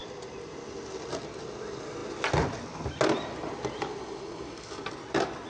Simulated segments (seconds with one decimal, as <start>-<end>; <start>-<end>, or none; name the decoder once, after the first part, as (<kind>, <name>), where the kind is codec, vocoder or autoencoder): none